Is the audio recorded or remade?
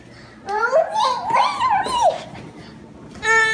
recorded